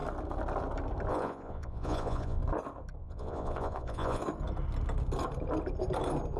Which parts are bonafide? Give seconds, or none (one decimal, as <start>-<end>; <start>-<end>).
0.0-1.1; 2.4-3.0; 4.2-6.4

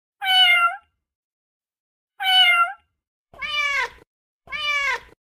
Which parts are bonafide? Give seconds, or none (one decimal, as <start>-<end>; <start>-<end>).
0.0-0.5; 1.6-2.1; 4.5-5.3

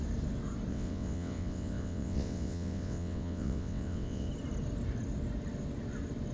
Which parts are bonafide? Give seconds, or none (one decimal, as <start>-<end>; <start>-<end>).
0.0-0.7; 4.3-6.3